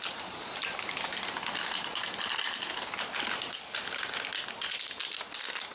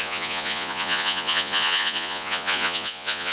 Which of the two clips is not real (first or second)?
second